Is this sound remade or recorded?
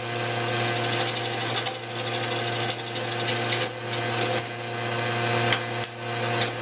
recorded